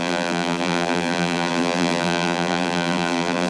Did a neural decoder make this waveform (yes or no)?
yes